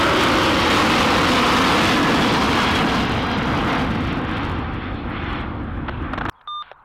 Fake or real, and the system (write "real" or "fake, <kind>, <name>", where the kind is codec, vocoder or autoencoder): real